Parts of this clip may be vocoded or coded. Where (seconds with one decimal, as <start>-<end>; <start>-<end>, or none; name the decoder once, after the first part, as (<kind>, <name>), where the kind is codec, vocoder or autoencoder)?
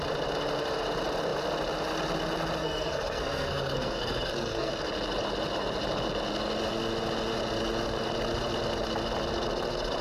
2.6-4.7 (codec, SNAC)